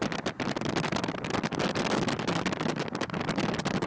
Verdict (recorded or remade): recorded